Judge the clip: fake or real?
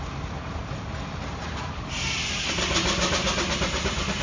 real